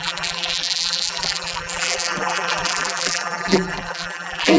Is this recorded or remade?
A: remade